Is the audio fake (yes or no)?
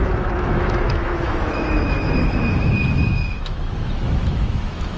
yes